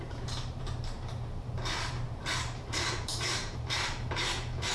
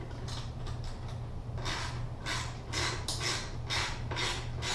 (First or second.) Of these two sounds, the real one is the second